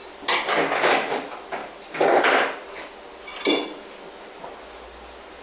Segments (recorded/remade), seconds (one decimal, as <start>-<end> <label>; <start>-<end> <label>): 0.0-5.4 recorded